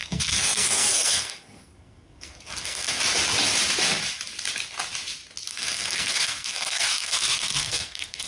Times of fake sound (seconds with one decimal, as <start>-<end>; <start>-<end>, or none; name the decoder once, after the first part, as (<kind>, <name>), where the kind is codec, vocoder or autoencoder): 0.0-3.0 (codec, SNAC); 5.5-8.3

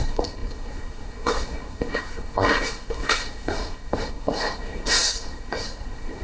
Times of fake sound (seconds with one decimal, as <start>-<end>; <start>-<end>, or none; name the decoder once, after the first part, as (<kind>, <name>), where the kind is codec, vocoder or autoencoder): 0.0-6.2 (codec, SNAC)

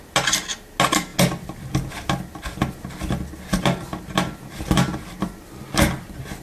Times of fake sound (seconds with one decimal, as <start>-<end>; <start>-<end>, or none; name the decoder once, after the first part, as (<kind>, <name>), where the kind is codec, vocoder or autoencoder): none

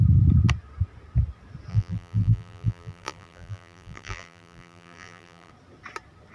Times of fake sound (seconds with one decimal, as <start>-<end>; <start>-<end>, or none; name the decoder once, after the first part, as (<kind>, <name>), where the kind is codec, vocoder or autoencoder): 1.7-5.5 (vocoder, BigVGAN v2)

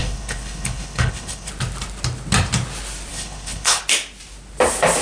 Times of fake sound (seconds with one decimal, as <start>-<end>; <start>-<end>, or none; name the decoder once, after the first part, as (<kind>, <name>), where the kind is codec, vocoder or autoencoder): 0.0-1.5 (codec, HILCodec); 3.1-3.8

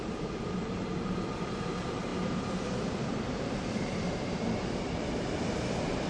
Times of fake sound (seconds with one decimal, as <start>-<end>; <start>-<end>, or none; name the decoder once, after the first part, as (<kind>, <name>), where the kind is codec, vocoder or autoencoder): 0.0-6.1 (vocoder, BigVGAN v2)

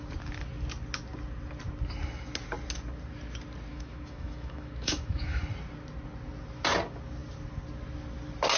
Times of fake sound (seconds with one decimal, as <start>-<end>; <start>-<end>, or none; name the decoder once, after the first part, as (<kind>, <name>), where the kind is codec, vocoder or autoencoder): 3.7-5.4 (autoencoder, DAC-VAE)